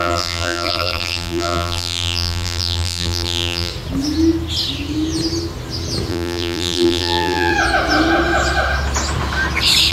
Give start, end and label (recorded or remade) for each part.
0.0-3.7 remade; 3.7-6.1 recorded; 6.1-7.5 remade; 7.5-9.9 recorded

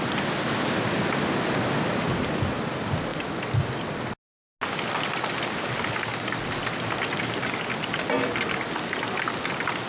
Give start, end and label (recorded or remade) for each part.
0.0-9.9 recorded

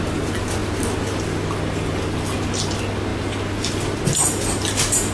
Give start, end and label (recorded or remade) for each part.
0.0-5.1 recorded

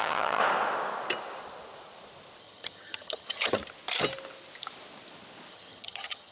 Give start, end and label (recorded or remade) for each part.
0.0-0.4 remade; 0.4-2.4 recorded; 2.4-3.6 remade; 3.6-5.5 recorded; 5.5-6.3 remade

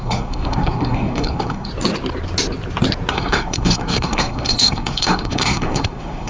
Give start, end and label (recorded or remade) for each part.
0.0-1.7 remade; 1.7-3.1 recorded; 3.1-6.3 remade